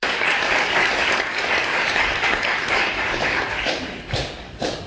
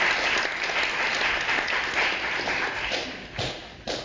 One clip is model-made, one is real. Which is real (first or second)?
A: second